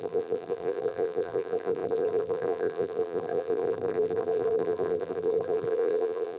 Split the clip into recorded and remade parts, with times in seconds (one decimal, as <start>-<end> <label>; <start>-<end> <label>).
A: 0.0-6.4 remade